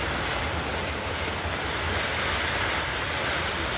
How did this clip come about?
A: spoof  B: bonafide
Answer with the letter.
B